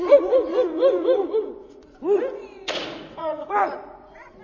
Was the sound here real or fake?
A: fake